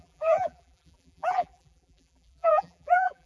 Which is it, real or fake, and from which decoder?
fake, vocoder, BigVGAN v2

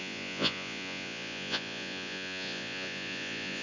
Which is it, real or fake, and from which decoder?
fake, vocoder, Vocos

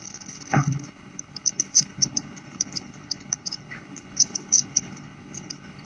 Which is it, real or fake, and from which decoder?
fake, codec, HILCodec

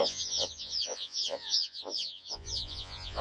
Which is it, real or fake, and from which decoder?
fake, vocoder, Vocos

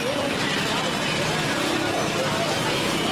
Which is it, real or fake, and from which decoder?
real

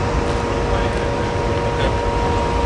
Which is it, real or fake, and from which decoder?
real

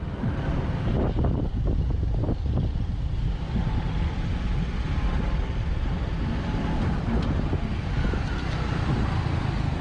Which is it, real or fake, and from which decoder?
real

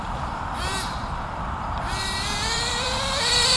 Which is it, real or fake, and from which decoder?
fake, vocoder, BigVGAN v2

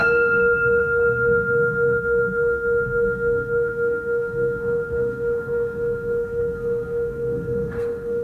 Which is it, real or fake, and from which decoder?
fake, codec, SNAC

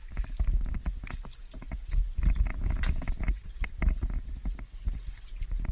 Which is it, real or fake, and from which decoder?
real